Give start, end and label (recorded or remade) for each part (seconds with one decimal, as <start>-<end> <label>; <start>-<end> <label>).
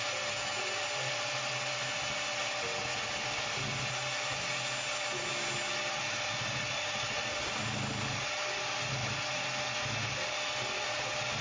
0.0-11.4 recorded